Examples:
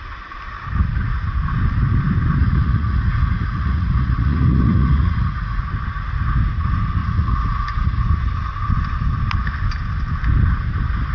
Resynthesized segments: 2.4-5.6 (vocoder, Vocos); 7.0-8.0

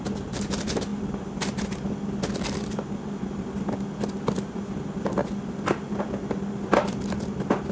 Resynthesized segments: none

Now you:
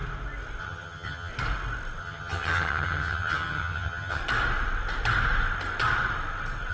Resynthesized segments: 0.6-1.3 (vocoder, HiFi-GAN); 2.0-4.2